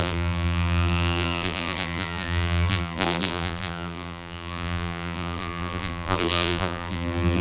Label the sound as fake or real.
fake